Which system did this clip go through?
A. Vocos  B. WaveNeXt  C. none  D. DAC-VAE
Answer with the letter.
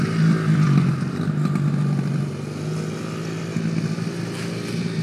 C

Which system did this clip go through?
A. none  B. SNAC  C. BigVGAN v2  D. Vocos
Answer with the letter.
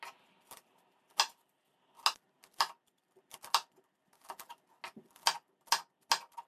A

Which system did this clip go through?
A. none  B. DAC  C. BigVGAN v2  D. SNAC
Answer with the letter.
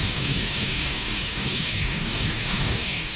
B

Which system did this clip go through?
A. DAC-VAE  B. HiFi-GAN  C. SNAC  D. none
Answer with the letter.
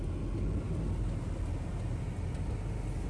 D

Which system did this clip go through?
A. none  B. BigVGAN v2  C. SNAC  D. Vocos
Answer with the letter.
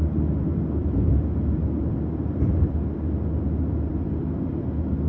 A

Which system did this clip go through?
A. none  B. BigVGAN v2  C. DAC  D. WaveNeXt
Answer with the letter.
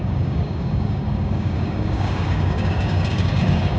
C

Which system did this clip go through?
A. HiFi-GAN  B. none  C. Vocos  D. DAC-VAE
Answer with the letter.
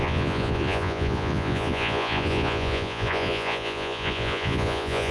C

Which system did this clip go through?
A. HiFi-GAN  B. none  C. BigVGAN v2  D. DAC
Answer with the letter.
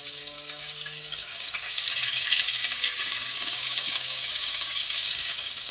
D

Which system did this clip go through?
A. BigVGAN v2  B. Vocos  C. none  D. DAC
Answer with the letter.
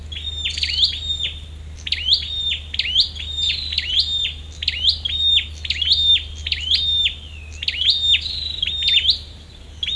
C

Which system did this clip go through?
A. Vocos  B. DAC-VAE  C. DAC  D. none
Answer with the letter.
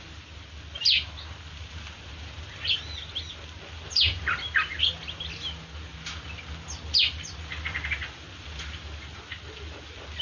D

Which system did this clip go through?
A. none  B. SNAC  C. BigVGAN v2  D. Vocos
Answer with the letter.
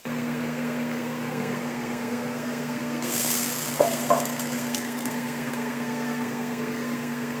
B